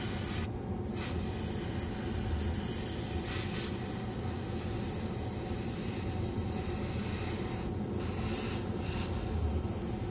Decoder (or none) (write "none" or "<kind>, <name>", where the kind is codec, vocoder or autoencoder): none